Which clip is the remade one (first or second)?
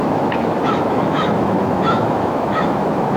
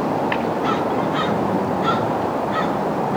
first